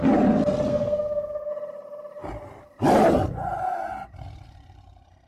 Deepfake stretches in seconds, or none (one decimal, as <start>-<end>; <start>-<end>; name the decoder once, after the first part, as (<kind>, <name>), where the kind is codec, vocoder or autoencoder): 0.7-1.5 (codec, SNAC)